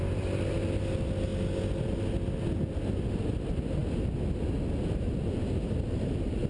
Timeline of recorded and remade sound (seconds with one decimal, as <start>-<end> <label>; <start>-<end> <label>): 0.0-6.5 recorded